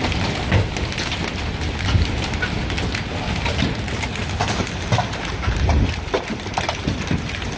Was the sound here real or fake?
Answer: real